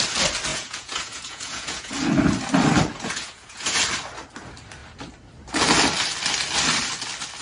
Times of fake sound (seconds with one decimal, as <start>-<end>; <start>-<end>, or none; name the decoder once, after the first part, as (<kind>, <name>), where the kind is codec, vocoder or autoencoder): 0.5-1.9 (vocoder, Vocos); 2.9-3.8